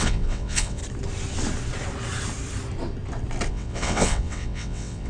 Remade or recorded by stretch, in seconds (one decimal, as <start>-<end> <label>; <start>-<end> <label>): 0.0-0.8 remade; 0.8-3.5 recorded; 3.5-5.1 remade